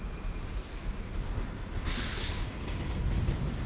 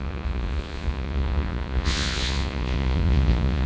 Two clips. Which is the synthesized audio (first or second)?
second